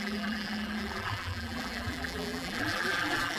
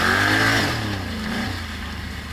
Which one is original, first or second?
second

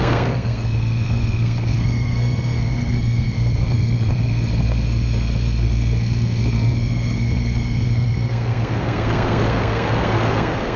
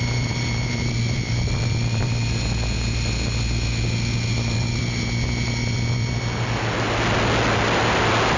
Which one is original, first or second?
second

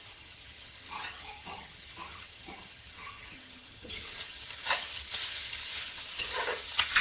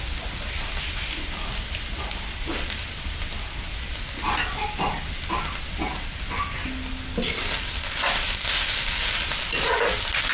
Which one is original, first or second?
second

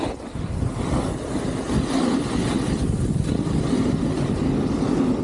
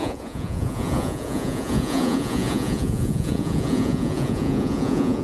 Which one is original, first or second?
first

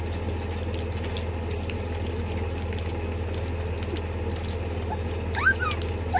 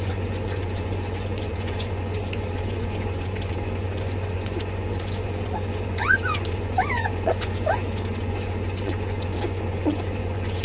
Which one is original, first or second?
first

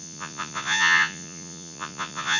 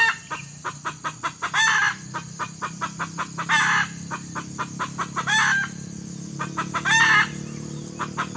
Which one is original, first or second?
second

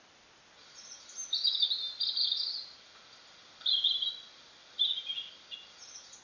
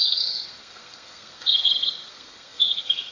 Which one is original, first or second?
first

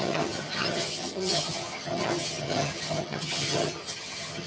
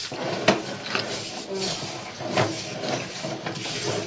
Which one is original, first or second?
second